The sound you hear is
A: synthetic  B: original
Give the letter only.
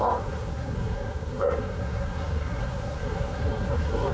A